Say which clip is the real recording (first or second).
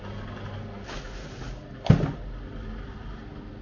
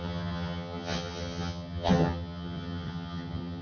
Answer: first